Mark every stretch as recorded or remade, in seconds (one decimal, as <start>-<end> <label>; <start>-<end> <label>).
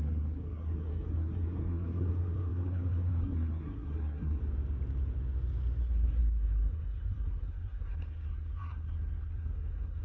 0.0-4.4 remade; 4.4-5.8 recorded; 5.8-10.0 remade